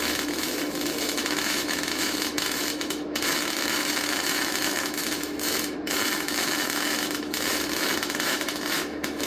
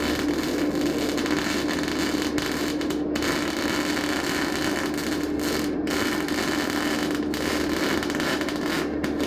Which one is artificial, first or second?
first